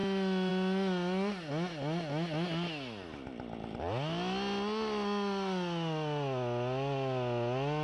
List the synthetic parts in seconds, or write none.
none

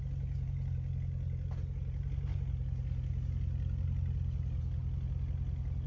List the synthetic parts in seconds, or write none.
none